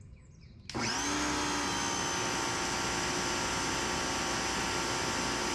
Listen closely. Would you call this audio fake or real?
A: real